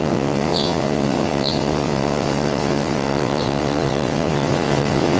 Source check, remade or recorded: remade